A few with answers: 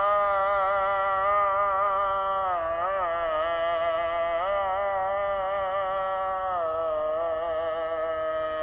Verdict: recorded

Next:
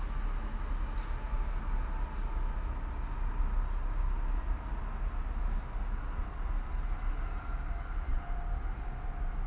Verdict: recorded